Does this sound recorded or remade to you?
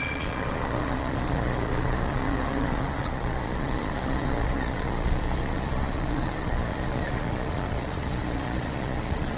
remade